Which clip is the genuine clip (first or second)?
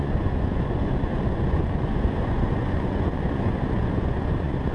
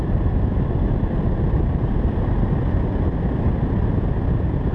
second